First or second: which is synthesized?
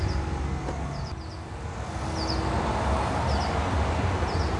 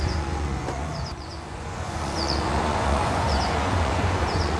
second